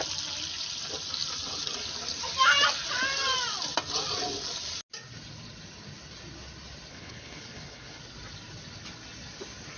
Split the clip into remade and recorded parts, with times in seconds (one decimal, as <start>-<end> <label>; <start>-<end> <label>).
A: 0.0-6.9 recorded; 6.9-8.0 remade; 8.0-9.8 recorded